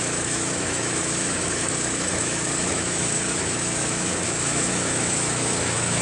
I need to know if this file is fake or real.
fake